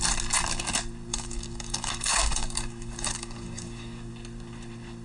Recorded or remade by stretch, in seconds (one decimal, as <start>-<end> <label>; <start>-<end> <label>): 0.0-1.1 recorded; 1.1-4.1 remade; 4.1-5.0 recorded